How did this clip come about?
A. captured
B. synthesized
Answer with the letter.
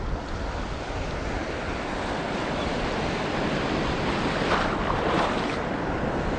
A